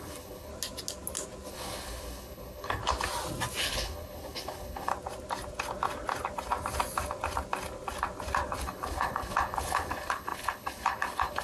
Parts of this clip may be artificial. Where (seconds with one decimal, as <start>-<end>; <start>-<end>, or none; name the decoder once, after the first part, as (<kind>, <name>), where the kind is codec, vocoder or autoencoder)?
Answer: 0.0-0.5 (codec, HILCodec); 1.5-2.8; 3.6-4.9; 8.6-11.4